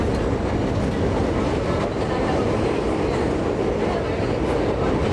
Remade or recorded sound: recorded